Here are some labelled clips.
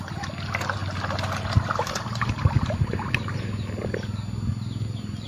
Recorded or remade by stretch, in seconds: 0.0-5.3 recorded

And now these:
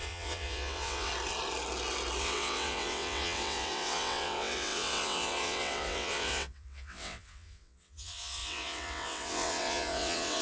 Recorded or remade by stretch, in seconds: 0.0-1.1 remade; 1.1-2.2 recorded; 2.2-10.4 remade